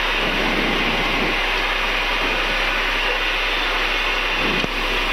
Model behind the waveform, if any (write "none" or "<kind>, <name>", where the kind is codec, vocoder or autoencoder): none